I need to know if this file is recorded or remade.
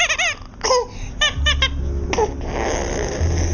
recorded